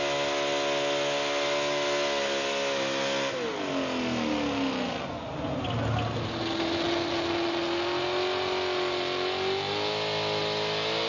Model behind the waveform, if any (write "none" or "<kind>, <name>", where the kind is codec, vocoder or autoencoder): none